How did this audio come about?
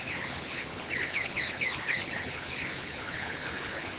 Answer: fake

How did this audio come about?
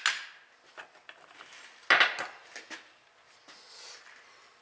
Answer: real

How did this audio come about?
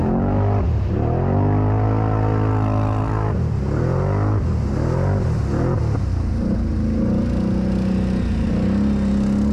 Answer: real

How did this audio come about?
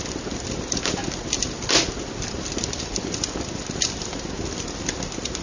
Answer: real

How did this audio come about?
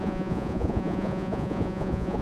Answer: fake